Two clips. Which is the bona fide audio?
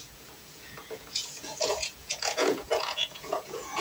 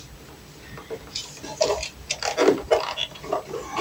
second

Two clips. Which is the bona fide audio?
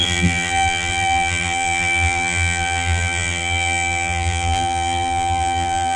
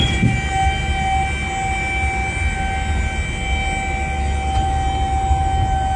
second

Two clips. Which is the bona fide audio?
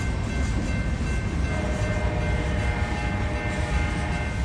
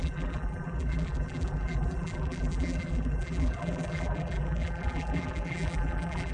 first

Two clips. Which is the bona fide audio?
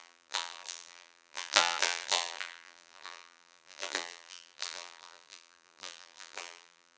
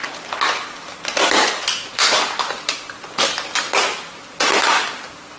second